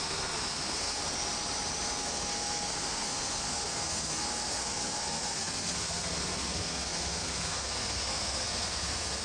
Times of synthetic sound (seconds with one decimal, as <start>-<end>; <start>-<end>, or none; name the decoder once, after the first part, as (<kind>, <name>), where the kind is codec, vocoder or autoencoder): 0.0-1.0 (codec, SNAC); 2.0-9.2